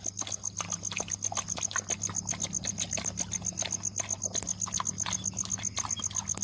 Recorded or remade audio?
recorded